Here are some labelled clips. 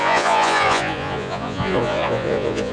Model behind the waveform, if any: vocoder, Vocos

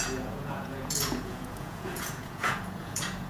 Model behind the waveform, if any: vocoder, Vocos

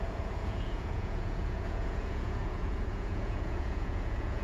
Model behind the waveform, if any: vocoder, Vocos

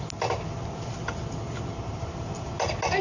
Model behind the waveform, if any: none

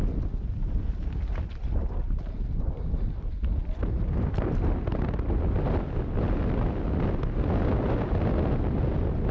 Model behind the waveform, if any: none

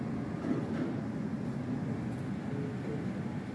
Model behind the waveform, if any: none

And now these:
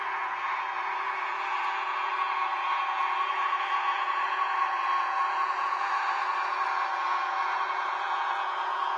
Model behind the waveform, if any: vocoder, Vocos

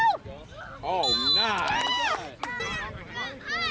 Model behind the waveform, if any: none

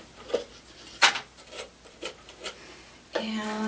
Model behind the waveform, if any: none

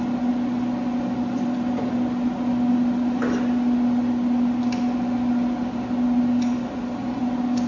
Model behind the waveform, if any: none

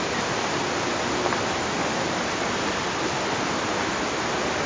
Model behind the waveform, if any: none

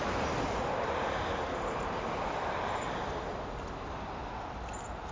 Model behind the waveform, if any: none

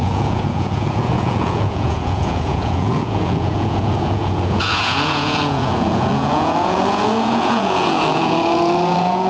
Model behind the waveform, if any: vocoder, Vocos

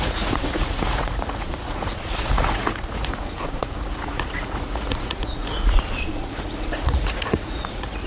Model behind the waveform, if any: vocoder, Vocos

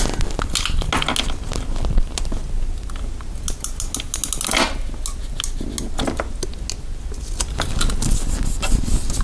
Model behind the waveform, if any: none